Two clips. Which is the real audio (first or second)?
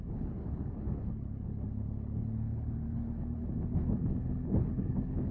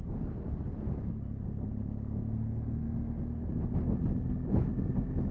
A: second